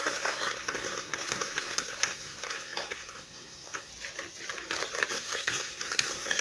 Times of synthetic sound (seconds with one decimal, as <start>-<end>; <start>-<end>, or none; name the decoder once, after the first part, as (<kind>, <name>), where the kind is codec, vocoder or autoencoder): 0.0-3.9 (codec, SNAC); 5.1-6.4